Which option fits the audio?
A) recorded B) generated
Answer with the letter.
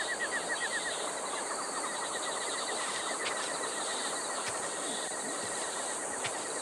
A